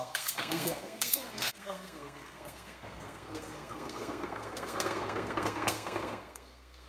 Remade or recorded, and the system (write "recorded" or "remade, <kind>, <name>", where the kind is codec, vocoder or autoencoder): remade, codec, SNAC